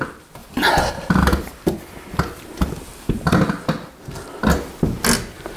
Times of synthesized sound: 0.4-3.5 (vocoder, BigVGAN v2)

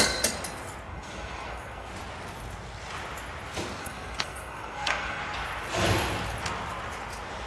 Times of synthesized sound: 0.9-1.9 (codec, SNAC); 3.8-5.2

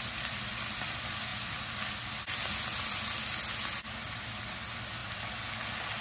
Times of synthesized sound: none

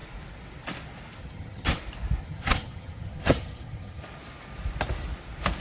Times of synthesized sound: 1.2-1.8 (vocoder, HiFi-GAN); 2.2-4.0